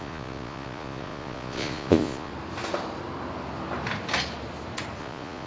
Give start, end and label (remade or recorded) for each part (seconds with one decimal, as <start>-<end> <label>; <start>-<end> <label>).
0.0-2.3 remade; 2.3-5.0 recorded; 5.0-5.5 remade